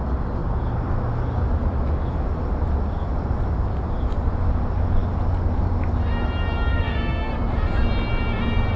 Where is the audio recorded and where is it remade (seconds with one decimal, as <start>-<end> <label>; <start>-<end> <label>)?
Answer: 0.0-6.7 recorded; 6.7-7.3 remade; 7.3-8.8 recorded